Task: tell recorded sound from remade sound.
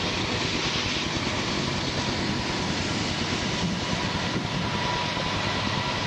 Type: recorded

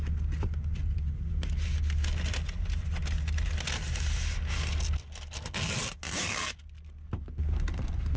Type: recorded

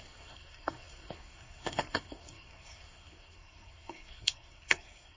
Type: remade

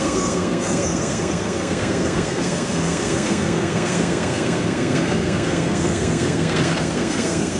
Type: remade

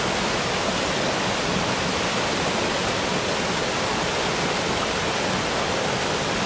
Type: recorded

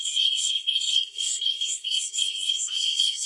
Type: remade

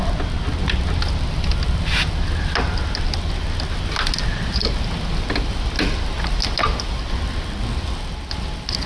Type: recorded